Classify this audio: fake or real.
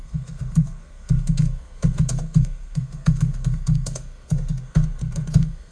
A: fake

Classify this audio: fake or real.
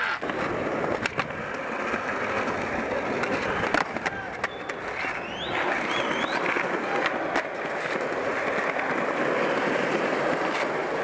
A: real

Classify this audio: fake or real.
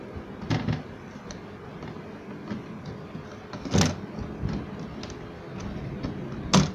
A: real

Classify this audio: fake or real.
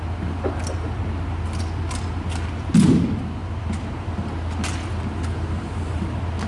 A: real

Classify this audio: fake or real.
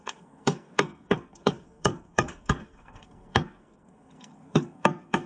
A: fake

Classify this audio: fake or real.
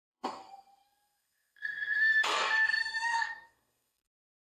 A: fake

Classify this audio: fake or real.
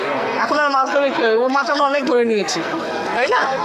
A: fake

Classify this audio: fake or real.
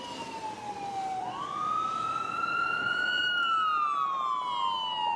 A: real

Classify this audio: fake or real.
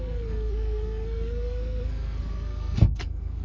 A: fake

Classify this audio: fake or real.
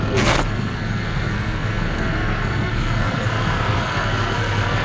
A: fake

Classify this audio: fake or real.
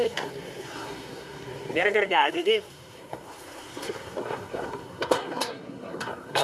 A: fake